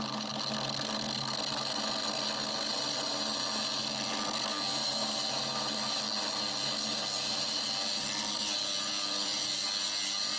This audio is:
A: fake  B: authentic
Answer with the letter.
B